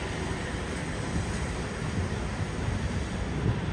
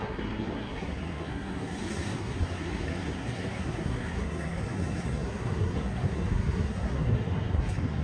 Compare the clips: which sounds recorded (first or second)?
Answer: first